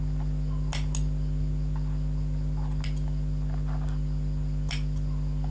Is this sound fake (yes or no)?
no